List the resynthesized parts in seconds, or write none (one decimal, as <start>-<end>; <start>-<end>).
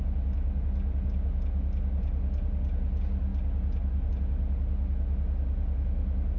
none